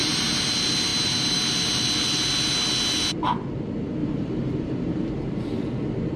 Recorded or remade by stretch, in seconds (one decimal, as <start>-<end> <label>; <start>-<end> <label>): 0.0-0.5 remade; 0.5-0.9 recorded; 0.9-1.4 remade; 1.4-4.0 recorded; 4.0-5.1 remade; 5.1-6.2 recorded